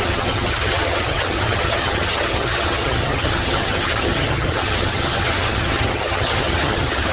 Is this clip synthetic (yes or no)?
yes